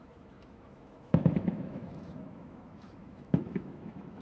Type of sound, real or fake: fake